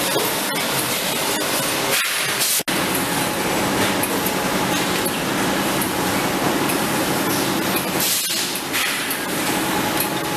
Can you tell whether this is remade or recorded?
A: recorded